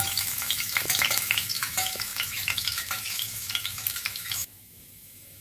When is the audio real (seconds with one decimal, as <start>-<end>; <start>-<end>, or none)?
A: none